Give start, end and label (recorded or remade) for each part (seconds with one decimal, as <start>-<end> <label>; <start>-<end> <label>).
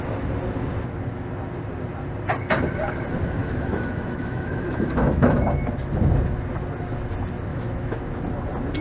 0.0-3.4 recorded; 3.4-5.5 remade; 5.5-7.5 recorded; 7.5-8.0 remade; 8.0-8.8 recorded